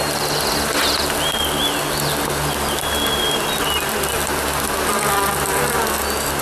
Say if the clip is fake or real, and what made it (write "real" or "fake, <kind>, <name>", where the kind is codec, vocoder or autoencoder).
real